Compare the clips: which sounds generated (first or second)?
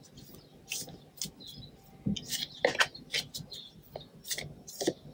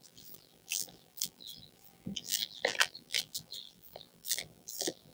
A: second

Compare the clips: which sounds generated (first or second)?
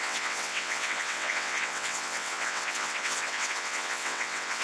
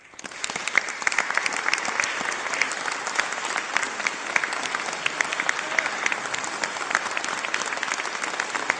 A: first